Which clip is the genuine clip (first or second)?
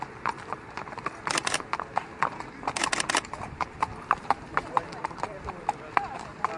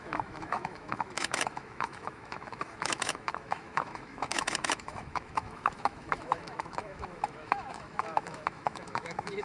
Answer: first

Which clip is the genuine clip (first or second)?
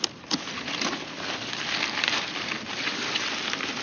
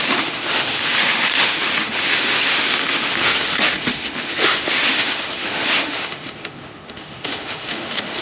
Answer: first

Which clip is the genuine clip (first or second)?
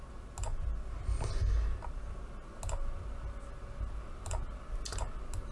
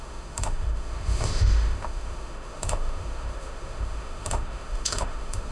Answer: first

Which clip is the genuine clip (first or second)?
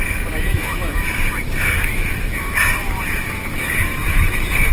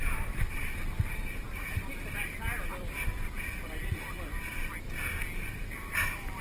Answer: second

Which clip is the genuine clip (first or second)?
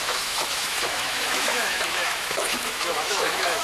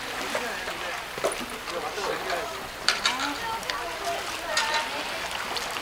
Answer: second